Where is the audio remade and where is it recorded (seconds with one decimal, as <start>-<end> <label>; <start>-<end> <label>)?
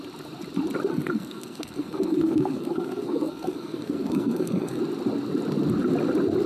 0.0-0.9 recorded; 0.9-4.8 remade; 4.8-6.5 recorded